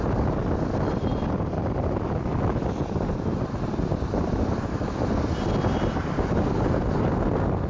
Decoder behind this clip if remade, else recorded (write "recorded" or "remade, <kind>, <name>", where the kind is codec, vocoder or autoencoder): recorded